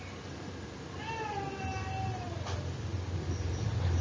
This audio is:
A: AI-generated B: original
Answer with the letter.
B